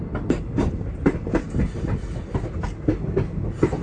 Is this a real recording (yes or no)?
yes